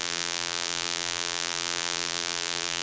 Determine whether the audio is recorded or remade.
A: remade